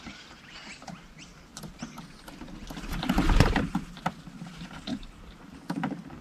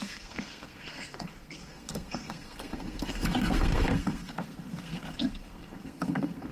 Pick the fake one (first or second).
second